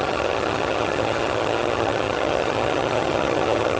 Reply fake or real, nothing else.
fake